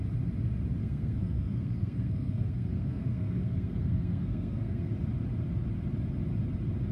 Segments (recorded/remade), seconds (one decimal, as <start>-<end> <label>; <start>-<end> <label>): 0.0-0.8 recorded; 0.8-4.9 remade; 4.9-6.9 recorded